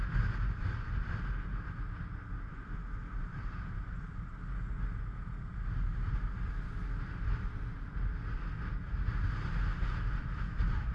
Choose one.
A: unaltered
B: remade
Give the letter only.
A